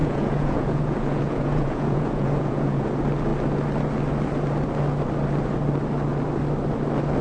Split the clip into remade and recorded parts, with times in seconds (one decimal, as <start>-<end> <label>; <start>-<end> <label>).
0.0-2.8 remade; 2.8-7.2 recorded